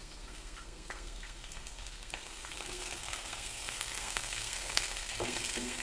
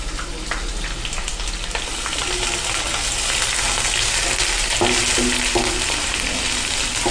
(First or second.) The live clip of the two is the second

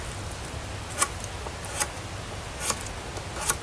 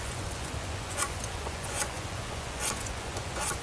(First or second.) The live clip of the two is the first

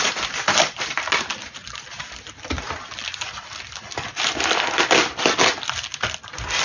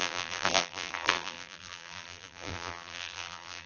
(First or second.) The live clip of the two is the first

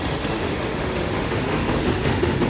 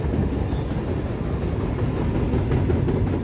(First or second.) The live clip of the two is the second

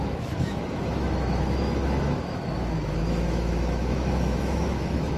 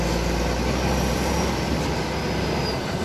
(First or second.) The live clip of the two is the second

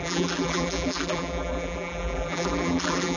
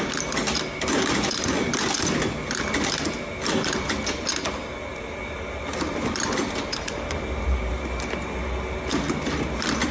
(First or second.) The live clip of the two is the second